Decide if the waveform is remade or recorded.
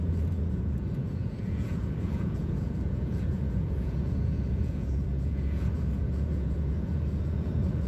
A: remade